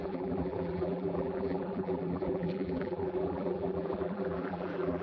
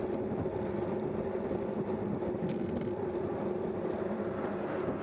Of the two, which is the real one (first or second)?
second